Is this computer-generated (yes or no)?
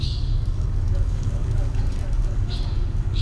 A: yes